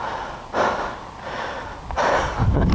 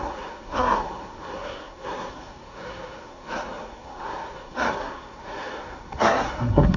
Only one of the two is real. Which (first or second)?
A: first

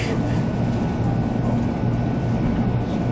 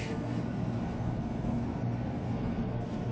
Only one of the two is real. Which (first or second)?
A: first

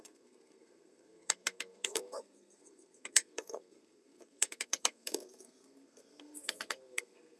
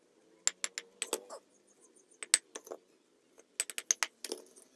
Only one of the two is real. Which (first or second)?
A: second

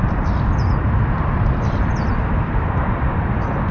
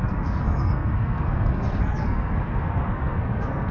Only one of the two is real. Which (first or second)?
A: first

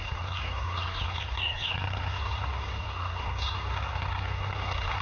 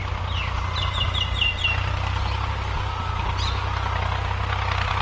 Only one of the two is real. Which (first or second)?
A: second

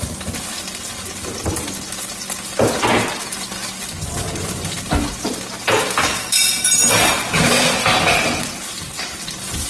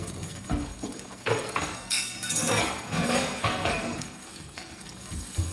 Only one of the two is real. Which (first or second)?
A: first